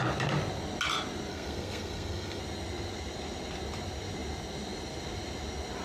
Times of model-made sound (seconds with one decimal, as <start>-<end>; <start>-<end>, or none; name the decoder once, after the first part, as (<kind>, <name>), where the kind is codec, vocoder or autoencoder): 1.3-2.4 (codec, SNAC)